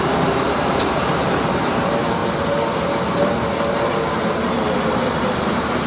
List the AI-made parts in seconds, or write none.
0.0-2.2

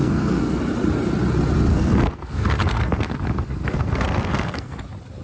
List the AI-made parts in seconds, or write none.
0.0-0.6; 1.7-4.8

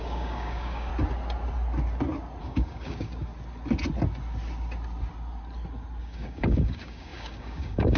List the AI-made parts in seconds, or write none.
0.0-0.9; 2.4-3.3; 6.0-8.0

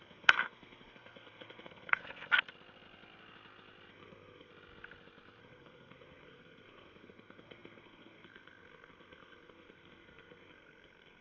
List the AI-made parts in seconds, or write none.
0.0-2.0; 3.9-4.5; 5.4-11.2

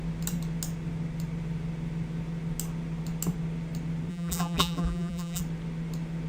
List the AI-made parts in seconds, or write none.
4.1-5.4

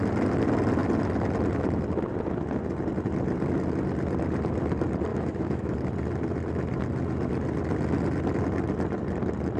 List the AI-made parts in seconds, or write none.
5.1-5.7

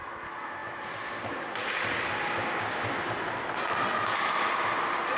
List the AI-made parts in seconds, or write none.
none